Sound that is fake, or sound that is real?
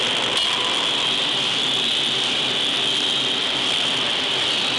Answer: real